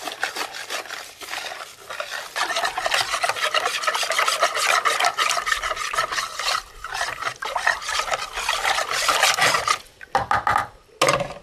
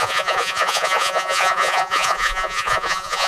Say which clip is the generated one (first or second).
second